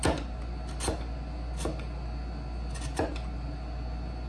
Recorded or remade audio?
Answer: recorded